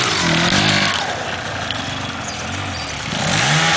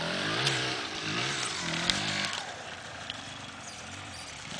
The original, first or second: first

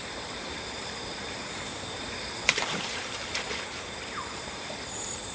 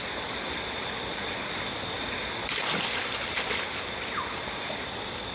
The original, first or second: second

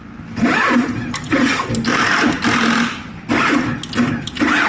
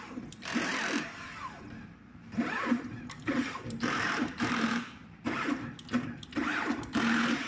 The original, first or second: first